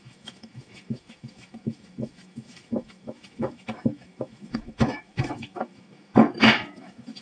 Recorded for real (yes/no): no